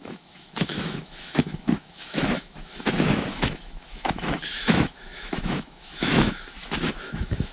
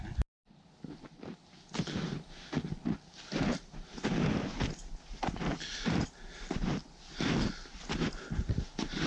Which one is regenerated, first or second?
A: first